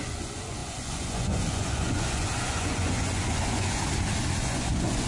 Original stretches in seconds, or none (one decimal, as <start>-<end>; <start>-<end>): 3.8-4.4